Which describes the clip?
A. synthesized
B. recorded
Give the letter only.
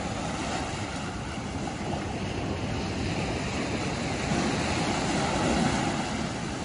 B